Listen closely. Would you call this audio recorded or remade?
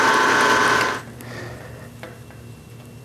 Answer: recorded